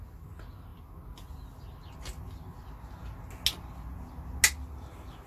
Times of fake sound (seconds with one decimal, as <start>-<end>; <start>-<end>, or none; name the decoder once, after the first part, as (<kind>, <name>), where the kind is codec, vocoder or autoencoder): none